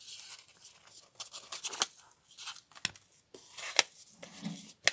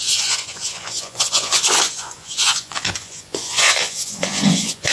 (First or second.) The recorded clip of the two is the first